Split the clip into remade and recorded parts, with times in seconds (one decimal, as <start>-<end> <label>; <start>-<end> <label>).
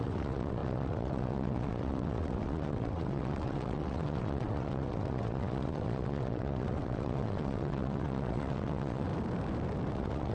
0.0-9.1 remade; 9.1-9.9 recorded; 9.9-10.3 remade